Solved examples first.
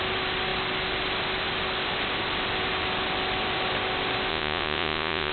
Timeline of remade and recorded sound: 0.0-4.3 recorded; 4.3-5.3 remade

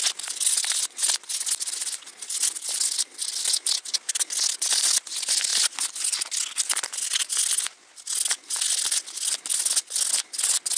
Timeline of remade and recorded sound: 0.0-10.8 recorded

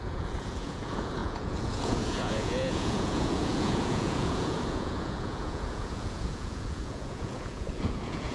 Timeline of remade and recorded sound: 0.0-8.3 remade